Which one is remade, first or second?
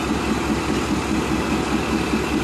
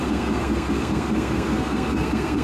second